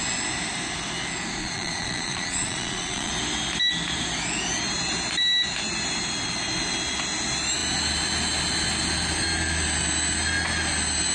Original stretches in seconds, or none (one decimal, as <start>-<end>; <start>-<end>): 0.0-1.4; 3.1-11.1